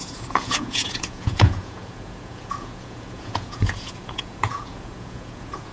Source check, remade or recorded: remade